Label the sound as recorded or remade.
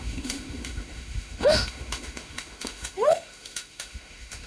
remade